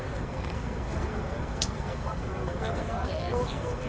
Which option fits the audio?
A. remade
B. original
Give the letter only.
A